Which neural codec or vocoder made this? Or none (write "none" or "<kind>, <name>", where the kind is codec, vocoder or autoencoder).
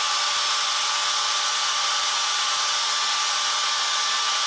none